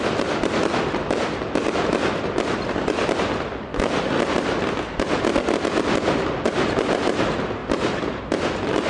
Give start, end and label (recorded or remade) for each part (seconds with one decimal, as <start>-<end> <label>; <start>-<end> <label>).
0.0-7.6 recorded; 7.6-8.2 remade; 8.2-8.9 recorded